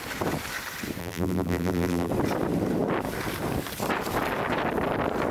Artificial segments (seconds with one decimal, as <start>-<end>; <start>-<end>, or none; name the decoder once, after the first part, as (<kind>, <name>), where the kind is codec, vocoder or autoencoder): 1.0-2.1 (vocoder, BigVGAN v2)